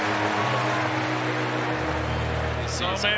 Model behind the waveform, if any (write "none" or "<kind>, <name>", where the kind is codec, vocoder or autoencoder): none